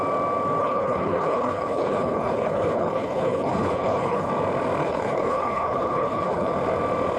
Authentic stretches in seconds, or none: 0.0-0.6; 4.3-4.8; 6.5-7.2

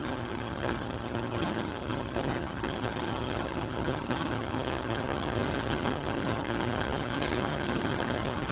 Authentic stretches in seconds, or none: none